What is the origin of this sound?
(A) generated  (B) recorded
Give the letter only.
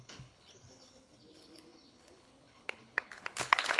A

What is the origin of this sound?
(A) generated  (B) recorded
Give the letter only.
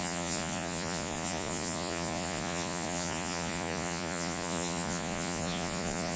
A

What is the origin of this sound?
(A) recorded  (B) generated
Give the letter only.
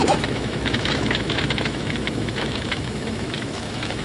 B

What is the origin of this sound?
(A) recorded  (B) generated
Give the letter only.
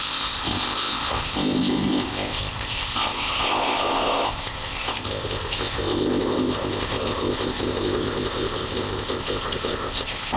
B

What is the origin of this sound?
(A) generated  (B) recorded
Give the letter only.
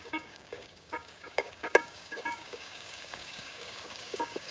A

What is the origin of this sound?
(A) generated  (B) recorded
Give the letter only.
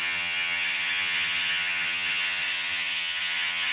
A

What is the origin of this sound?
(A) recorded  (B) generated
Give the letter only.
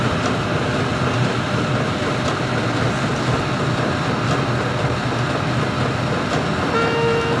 A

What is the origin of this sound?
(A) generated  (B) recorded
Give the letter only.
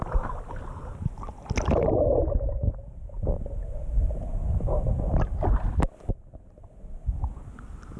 B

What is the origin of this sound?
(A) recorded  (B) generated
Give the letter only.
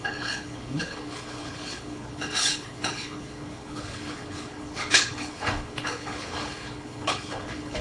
B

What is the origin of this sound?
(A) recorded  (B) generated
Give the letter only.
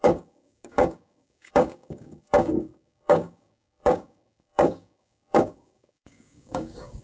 B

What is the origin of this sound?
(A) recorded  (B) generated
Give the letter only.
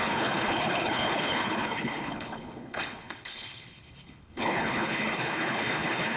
B